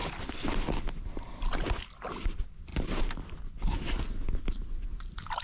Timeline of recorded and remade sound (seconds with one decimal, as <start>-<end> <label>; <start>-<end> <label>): 0.0-5.4 recorded